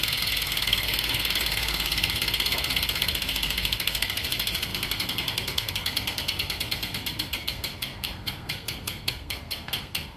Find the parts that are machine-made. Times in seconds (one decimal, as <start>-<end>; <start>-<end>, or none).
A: 0.0-10.2